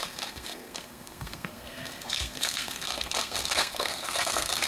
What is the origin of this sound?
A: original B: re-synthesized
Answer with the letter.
B